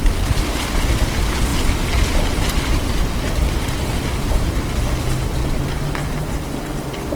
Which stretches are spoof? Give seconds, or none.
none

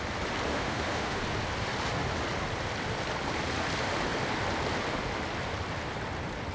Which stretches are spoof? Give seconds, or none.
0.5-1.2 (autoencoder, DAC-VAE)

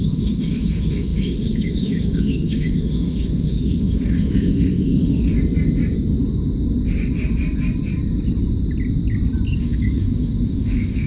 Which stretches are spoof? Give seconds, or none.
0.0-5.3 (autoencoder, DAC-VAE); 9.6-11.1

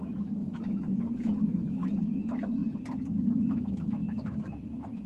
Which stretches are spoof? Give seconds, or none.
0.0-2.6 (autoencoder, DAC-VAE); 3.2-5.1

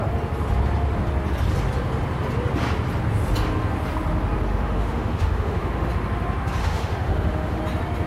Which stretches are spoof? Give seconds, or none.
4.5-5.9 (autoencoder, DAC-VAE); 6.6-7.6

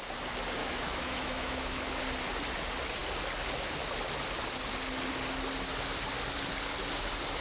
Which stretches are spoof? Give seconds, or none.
0.6-1.8 (autoencoder, DAC-VAE)